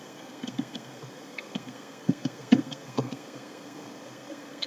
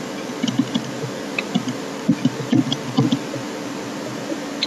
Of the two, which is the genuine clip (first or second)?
second